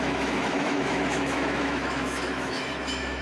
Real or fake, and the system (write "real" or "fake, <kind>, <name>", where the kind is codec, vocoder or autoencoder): fake, autoencoder, DAC-VAE